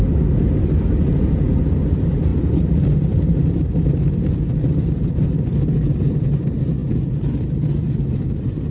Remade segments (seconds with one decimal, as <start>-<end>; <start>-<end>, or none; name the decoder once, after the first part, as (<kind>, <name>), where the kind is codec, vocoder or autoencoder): none